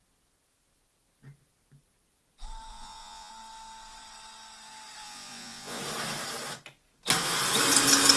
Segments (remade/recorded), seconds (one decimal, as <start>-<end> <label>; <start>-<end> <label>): 0.0-2.7 recorded; 2.7-3.3 remade; 3.3-5.0 recorded; 5.0-5.8 remade; 5.8-8.2 recorded